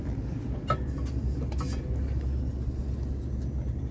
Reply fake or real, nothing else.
real